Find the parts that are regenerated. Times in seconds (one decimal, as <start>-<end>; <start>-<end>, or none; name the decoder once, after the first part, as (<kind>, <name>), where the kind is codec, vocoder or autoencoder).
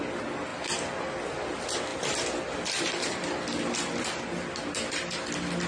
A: 1.9-5.3 (vocoder, BigVGAN v2)